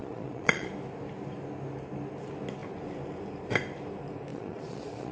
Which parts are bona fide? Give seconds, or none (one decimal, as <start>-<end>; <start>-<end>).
0.7-4.3